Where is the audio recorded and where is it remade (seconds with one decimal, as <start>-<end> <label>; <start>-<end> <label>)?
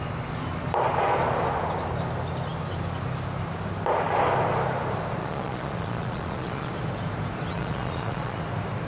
0.0-5.2 recorded; 5.2-6.7 remade; 6.7-7.5 recorded; 7.5-8.4 remade; 8.4-8.9 recorded